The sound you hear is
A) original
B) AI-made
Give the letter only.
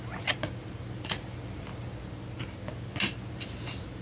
A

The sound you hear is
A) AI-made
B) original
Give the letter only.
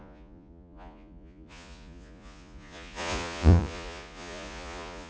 A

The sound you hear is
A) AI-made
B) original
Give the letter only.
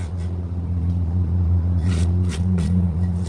A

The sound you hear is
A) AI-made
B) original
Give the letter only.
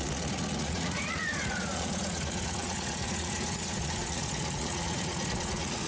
A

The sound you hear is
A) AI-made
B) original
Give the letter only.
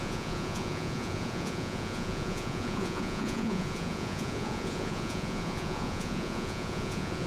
A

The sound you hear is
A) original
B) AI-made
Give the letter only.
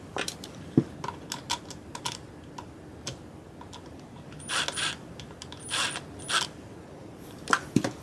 A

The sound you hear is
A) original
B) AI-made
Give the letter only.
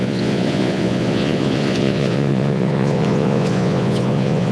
B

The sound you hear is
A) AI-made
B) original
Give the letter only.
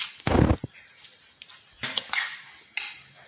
B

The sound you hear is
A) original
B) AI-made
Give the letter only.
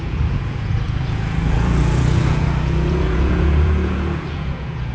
B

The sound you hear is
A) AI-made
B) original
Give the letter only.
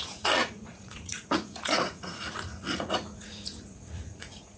A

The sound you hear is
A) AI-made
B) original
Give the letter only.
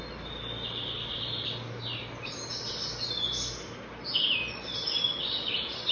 B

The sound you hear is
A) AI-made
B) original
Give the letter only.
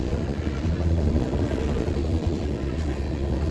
A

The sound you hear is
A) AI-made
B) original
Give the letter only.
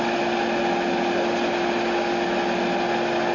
B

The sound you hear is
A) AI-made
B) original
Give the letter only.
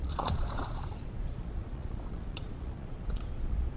A